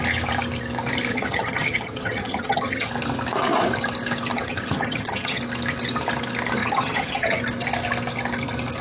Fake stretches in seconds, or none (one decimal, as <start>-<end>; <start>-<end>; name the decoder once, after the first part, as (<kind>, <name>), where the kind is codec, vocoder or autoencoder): 1.1-2.9 (vocoder, HiFi-GAN); 4.3-5.4; 6.6-7.4